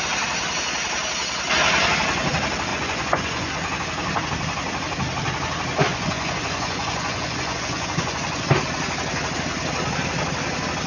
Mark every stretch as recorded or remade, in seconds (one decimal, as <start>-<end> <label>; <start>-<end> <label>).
0.0-2.7 recorded; 2.7-3.5 remade; 3.5-5.9 recorded; 5.9-8.5 remade; 8.5-10.9 recorded